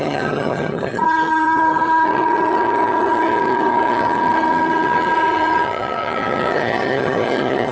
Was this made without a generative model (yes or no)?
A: no